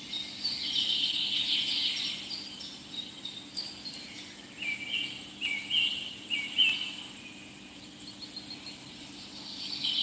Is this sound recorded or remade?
recorded